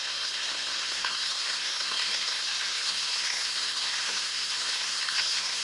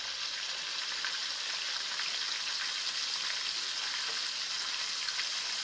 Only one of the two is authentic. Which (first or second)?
second